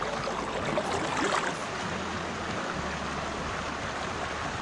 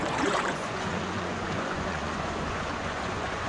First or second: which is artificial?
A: second